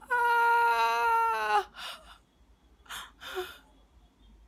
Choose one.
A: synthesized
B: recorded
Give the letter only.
B